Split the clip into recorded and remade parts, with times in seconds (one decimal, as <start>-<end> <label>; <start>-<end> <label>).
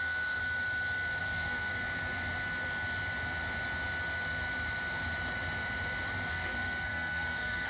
0.0-0.4 remade; 0.4-1.2 recorded; 1.2-1.7 remade; 1.7-6.3 recorded; 6.3-7.7 remade